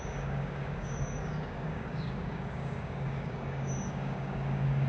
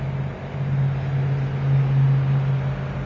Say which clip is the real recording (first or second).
second